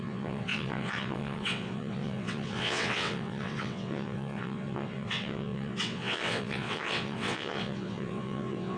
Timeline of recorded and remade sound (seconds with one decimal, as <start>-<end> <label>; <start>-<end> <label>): 0.0-8.8 remade